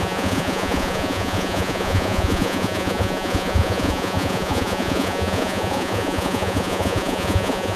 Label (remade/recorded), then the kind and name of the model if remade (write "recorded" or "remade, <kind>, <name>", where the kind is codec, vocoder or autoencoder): remade, vocoder, Vocos